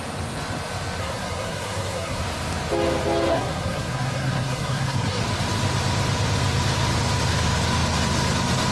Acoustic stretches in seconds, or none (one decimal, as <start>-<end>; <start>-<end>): 0.0-1.0; 2.2-3.3; 5.2-8.7